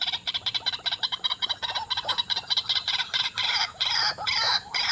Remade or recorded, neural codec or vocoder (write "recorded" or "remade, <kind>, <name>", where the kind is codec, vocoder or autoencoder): remade, vocoder, BigVGAN v2